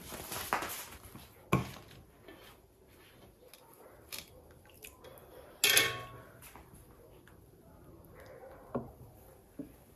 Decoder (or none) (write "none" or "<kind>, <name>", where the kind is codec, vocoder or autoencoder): none